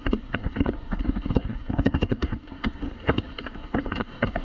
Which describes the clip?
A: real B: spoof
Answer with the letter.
B